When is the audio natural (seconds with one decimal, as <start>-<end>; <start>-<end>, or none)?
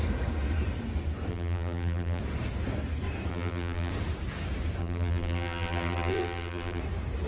0.0-1.3; 2.2-3.3; 3.9-4.8; 6.8-7.3